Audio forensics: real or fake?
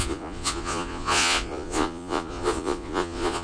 fake